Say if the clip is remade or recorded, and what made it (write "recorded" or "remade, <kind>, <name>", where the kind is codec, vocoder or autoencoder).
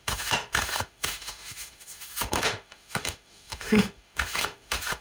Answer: remade, autoencoder, DAC-VAE